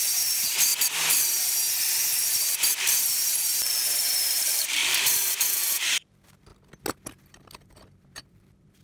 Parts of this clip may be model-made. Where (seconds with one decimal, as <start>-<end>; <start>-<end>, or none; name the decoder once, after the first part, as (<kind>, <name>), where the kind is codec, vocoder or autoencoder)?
0.0-0.7 (vocoder, BigVGAN v2); 2.1-2.7; 4.0-6.5; 7.3-8.8